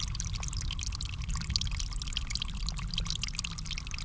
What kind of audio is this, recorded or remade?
recorded